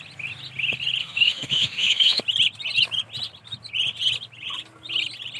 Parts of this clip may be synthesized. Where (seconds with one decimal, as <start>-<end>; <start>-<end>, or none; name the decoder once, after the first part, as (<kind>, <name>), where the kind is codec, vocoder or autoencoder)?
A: 1.0-2.2 (autoencoder, DAC-VAE)